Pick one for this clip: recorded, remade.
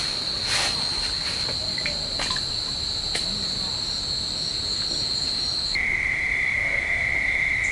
recorded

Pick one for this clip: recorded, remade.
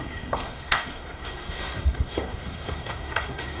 remade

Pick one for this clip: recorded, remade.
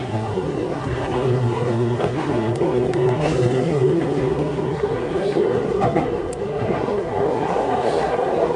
remade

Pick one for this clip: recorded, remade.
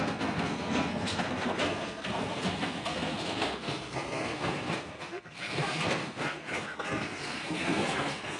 remade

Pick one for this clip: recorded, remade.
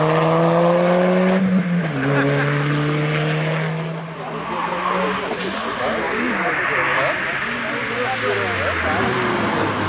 recorded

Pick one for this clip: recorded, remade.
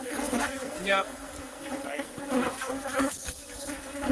remade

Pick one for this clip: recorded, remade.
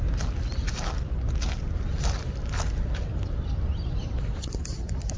recorded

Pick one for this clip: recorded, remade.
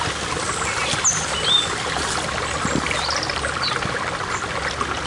recorded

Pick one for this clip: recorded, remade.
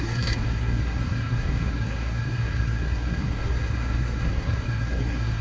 remade